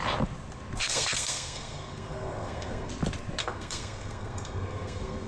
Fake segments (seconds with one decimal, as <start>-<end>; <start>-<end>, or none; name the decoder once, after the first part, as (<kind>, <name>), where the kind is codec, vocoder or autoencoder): 0.8-2.9 (codec, SNAC); 3.4-5.3